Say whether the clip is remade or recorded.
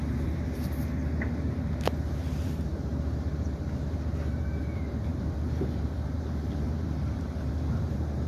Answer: remade